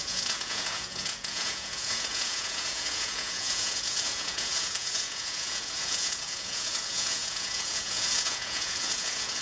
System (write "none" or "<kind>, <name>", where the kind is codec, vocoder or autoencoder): vocoder, Vocos